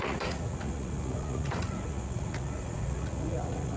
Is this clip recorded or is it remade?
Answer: remade